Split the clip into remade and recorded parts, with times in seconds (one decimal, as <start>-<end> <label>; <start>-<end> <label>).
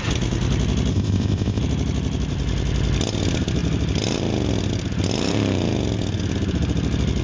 0.0-0.9 recorded; 0.9-1.6 remade; 1.6-7.2 recorded